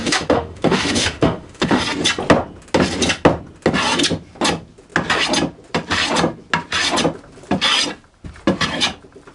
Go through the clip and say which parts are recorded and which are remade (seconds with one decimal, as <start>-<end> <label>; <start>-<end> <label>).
0.0-1.8 remade; 1.8-9.3 recorded